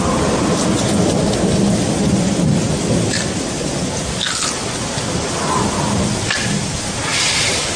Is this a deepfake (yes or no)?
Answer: no